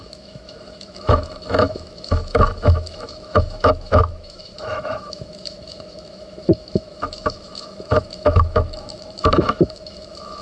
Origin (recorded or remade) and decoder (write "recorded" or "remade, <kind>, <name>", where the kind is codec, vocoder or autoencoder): remade, autoencoder, DAC-VAE